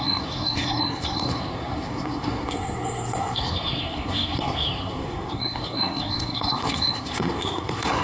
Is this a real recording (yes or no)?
no